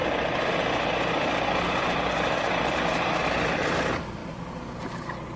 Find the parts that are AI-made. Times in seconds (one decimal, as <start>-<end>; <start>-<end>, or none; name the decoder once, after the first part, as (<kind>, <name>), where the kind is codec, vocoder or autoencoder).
none